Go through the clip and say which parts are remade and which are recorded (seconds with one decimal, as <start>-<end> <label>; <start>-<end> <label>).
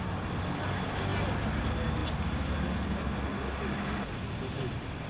0.0-5.1 recorded